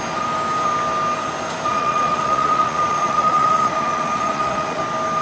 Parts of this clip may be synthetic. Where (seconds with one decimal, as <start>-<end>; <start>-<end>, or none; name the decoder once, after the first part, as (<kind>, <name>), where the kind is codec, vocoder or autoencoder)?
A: 1.7-4.8 (vocoder, Vocos)